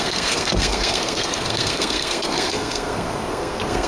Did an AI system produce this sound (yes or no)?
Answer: yes